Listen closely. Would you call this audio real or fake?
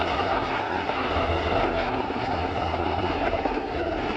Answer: fake